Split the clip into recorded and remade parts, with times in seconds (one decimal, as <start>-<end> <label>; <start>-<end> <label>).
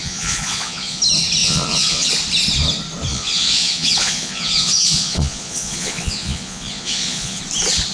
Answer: 0.0-1.0 remade; 1.0-1.4 recorded; 1.4-2.1 remade; 2.1-3.1 recorded; 3.1-7.4 remade; 7.4-7.9 recorded